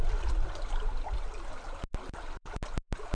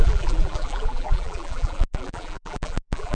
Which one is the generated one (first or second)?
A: second